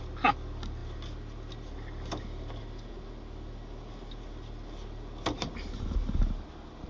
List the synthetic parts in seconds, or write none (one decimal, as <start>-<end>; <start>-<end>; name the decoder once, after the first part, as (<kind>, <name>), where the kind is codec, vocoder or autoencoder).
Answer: none